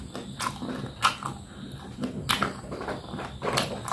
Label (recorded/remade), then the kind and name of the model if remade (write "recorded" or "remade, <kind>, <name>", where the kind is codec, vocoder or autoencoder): recorded